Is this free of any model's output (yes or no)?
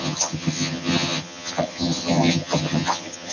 no